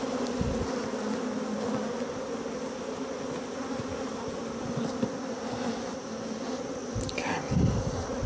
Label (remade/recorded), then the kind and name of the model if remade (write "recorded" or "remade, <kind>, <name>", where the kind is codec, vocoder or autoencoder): recorded